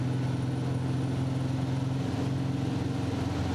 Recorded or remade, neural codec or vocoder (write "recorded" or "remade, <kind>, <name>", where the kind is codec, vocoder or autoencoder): recorded